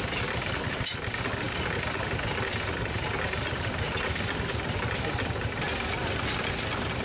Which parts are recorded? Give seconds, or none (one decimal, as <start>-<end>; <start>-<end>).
0.0-7.0